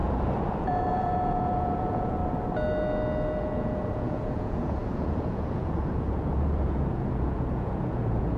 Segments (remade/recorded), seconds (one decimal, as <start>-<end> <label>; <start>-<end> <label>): 0.0-2.2 remade; 2.2-3.4 recorded; 3.4-8.4 remade